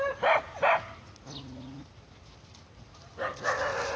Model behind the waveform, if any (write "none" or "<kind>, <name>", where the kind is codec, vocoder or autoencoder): none